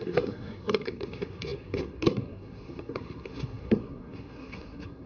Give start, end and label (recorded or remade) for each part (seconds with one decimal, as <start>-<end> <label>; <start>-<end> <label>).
0.0-5.1 remade